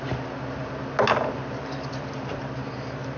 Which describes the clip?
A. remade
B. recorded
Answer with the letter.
B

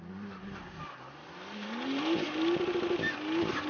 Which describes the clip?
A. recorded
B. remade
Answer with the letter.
A